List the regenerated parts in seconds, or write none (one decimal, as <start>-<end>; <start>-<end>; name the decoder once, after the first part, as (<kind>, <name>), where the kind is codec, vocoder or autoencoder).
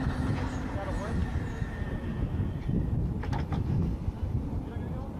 none